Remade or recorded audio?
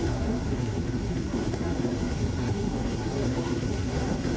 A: remade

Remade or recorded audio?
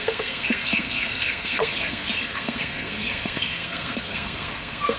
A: remade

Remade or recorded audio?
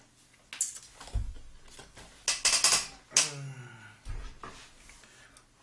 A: recorded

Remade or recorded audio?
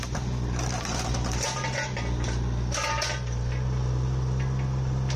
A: recorded